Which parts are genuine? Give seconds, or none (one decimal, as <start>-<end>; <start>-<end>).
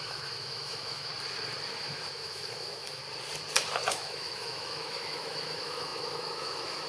1.1-1.7; 3.0-3.9